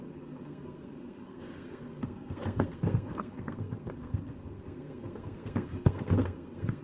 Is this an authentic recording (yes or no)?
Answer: no